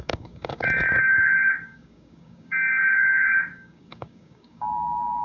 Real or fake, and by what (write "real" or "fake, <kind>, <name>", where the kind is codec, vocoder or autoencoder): fake, codec, DAC